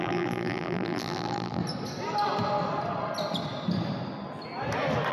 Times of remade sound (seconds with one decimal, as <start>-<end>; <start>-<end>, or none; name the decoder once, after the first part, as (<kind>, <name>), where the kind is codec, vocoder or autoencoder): 0.0-1.6 (vocoder, BigVGAN v2)